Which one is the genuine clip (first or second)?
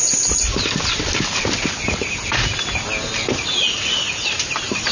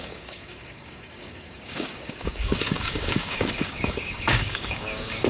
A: first